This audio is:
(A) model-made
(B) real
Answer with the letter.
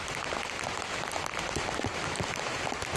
B